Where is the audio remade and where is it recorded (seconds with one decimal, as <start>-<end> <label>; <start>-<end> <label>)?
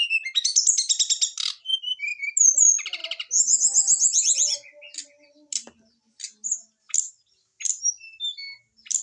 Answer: 0.0-9.0 recorded